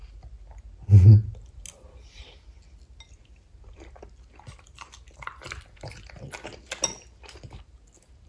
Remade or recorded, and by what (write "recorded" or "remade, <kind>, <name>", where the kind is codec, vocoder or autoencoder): recorded